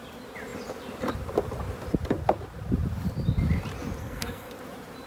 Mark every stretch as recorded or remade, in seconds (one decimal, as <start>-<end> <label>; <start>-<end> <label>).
0.0-4.0 recorded; 4.0-4.5 remade; 4.5-5.1 recorded